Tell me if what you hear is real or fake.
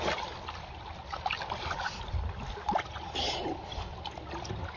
real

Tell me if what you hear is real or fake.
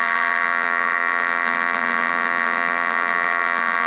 fake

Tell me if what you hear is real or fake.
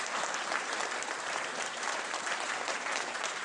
fake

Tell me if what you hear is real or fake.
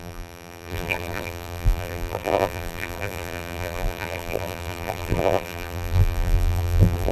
fake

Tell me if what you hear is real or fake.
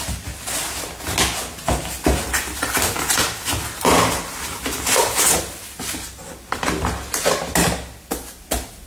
real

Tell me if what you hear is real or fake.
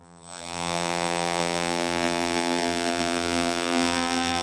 fake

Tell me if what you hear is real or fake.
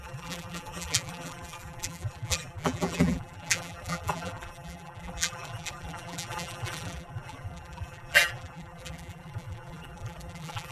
fake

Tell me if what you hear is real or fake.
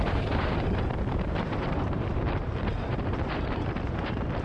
fake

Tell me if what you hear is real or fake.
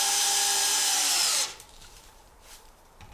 fake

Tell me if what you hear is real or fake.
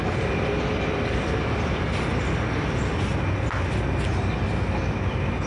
real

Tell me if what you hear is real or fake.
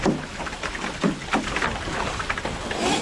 real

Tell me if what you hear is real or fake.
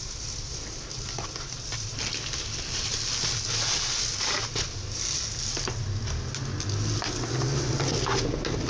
real